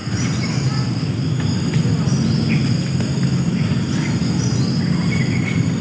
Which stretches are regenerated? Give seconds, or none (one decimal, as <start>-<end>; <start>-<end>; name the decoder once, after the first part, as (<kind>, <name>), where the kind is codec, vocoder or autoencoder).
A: none

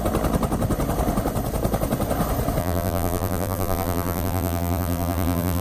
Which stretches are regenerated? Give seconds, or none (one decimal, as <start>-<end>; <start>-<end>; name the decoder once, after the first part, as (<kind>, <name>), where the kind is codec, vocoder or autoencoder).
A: 2.6-5.6 (vocoder, BigVGAN v2)

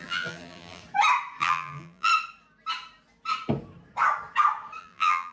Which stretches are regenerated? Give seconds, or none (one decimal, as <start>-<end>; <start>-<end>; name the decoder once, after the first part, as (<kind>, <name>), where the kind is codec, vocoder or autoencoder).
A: 0.0-0.8 (vocoder, BigVGAN v2); 1.4-2.1; 4.8-5.3

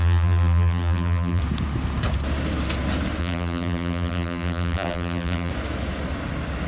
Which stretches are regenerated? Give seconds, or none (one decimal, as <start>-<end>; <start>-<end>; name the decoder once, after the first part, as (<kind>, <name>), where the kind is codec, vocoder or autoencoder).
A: 0.0-1.4 (vocoder, BigVGAN v2); 3.2-5.5

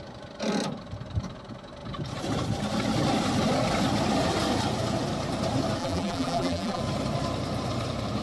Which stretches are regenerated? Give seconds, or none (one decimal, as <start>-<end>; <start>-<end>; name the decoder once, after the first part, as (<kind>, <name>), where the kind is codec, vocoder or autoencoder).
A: 5.8-6.8 (vocoder, BigVGAN v2)

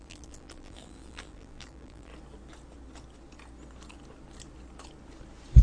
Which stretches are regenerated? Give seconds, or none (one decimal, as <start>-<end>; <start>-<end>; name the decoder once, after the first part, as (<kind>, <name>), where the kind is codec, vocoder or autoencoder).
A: 0.0-2.1 (vocoder, BigVGAN v2)